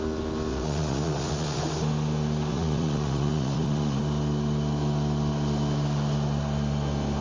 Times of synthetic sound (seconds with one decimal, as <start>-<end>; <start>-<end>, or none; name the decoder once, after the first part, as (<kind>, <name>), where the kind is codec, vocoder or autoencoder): 0.5-1.6 (vocoder, Vocos); 2.5-4.0